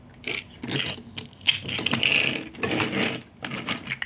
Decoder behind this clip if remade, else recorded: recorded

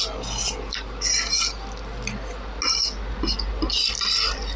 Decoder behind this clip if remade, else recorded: recorded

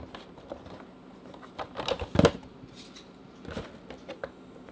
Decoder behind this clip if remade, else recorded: recorded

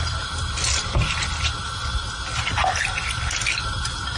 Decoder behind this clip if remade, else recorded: recorded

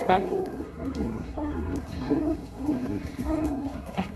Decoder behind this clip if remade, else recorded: remade, codec, SNAC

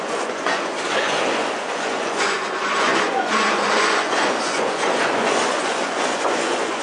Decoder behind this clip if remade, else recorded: remade, vocoder, Vocos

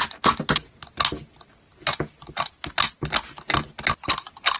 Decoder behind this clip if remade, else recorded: recorded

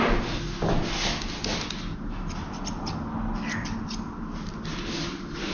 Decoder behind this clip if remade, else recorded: recorded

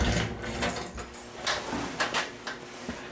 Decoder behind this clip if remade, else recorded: recorded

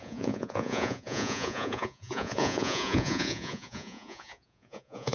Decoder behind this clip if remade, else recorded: remade, vocoder, Vocos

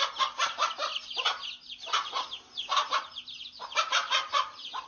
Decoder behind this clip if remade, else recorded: recorded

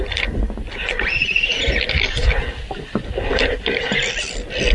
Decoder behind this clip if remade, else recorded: recorded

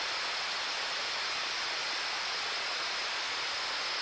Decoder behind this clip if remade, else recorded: recorded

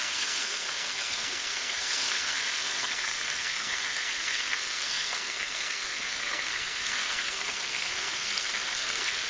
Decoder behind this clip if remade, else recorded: remade, codec, SNAC